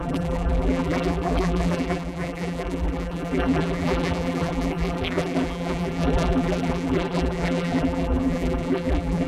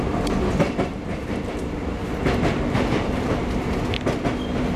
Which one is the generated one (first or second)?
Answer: first